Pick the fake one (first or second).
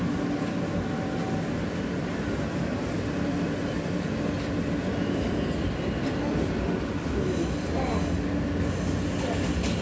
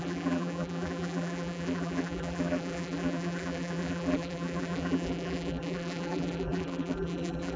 second